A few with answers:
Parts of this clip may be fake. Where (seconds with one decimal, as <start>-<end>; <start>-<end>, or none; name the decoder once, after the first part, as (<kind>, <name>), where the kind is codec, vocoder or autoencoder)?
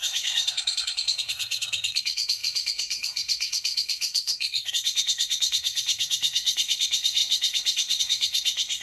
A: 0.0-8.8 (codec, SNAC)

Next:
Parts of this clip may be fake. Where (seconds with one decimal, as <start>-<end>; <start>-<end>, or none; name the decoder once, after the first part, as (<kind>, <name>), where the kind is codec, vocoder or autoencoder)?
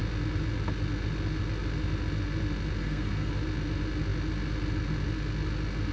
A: 2.8-3.3 (codec, SNAC)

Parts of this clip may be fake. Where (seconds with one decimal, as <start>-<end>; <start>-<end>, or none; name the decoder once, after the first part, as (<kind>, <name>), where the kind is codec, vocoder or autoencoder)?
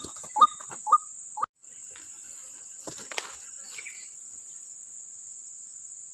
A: none